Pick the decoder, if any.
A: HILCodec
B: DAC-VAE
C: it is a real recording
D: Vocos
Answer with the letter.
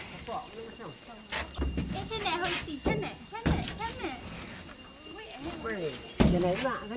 C